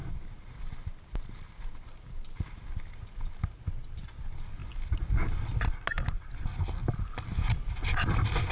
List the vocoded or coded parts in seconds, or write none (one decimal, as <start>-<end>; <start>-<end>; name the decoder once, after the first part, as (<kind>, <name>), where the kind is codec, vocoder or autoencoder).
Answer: none